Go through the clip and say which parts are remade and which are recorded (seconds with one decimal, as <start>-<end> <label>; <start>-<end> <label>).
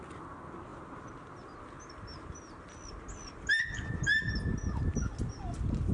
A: 0.0-5.9 recorded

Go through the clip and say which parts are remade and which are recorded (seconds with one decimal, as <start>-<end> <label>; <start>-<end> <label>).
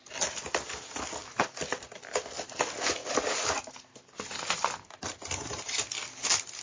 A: 0.0-6.6 recorded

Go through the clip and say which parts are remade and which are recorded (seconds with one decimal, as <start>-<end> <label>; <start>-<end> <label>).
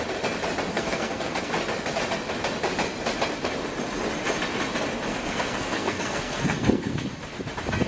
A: 0.0-0.7 recorded; 0.7-1.5 remade; 1.5-5.1 recorded; 5.1-7.1 remade; 7.1-7.9 recorded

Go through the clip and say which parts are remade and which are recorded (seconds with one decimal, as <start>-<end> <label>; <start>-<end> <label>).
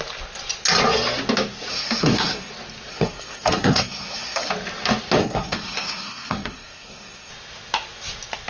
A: 0.0-1.7 recorded; 1.7-2.5 remade; 2.5-2.9 recorded; 2.9-4.5 remade; 4.5-5.2 recorded; 5.2-7.3 remade; 7.3-8.5 recorded